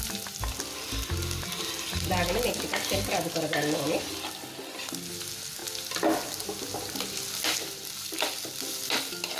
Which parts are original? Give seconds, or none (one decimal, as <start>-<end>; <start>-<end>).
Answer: 0.0-9.4